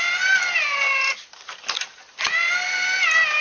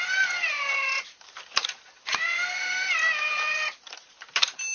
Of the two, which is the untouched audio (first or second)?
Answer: first